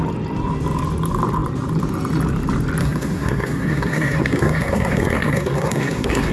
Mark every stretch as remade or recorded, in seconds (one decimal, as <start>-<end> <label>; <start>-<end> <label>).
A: 0.0-2.8 recorded; 2.8-6.3 remade